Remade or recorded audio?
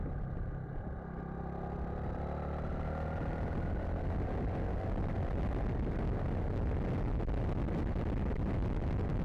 recorded